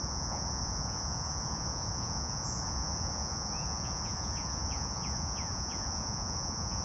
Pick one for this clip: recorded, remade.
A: remade